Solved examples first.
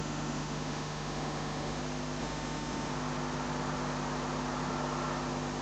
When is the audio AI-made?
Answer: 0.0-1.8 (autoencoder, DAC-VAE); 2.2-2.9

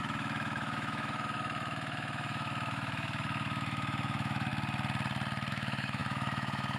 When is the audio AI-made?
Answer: 0.0-4.5 (autoencoder, DAC-VAE); 5.5-6.8

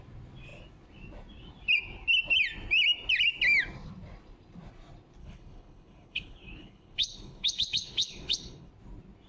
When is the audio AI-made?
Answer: 5.2-8.7 (codec, HILCodec)

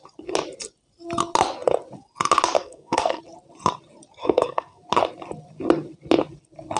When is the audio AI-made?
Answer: 2.6-3.2 (codec, SNAC); 4.2-4.8